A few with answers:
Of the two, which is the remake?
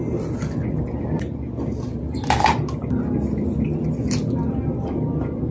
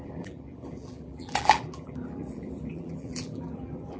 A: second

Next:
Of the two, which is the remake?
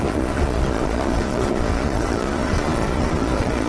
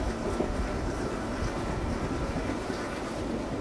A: first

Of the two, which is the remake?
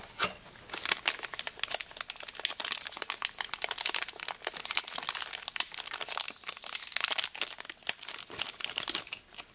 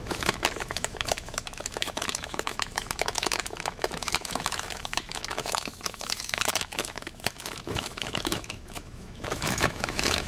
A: second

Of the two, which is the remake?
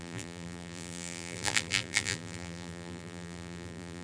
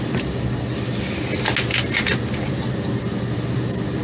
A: first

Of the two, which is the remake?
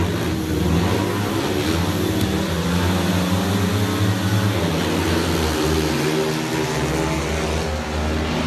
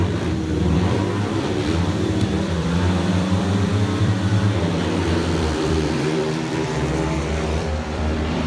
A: second